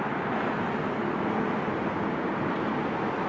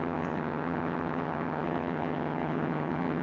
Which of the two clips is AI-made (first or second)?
second